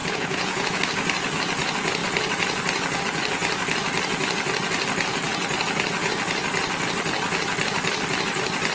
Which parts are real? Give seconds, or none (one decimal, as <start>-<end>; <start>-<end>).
0.8-8.7